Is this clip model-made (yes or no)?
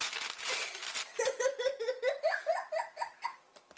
no